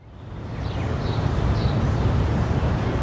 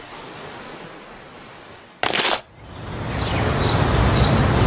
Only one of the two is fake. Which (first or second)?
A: first